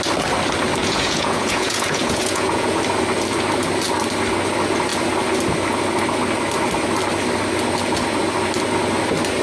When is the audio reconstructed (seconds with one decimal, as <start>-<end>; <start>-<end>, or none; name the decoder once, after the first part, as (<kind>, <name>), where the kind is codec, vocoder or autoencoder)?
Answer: 0.8-2.8 (vocoder, Vocos)